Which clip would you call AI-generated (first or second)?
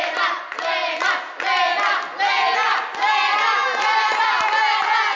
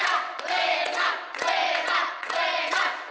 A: second